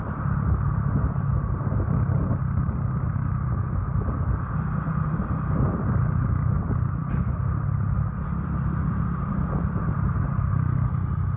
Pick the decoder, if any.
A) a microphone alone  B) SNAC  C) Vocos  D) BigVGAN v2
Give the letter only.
A